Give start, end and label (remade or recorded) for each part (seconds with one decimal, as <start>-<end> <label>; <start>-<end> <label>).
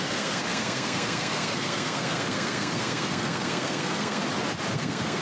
0.0-4.2 remade; 4.2-4.7 recorded; 4.7-5.2 remade